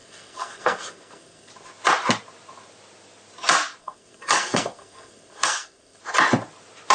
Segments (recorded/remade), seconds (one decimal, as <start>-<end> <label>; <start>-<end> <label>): 0.0-1.5 remade; 1.5-3.8 recorded; 3.8-6.0 remade; 6.0-6.9 recorded